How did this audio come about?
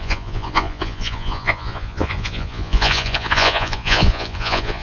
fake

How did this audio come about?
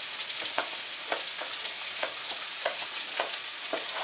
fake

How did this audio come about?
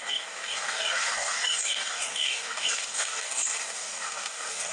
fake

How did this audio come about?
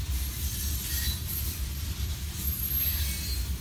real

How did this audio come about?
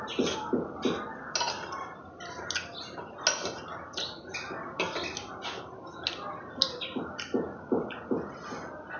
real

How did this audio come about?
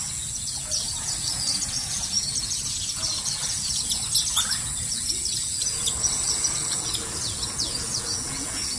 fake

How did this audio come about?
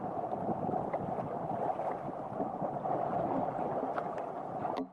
real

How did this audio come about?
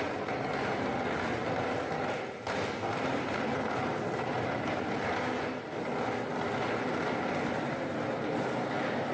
real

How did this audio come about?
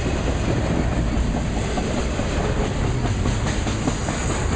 real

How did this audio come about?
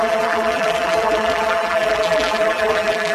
fake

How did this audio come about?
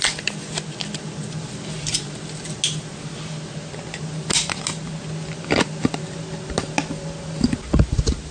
real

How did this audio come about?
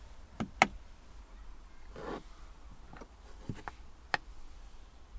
real